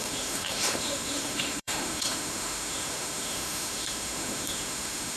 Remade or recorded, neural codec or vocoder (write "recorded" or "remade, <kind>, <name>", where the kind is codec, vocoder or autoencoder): remade, autoencoder, DAC-VAE